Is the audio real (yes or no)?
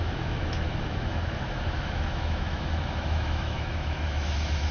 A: no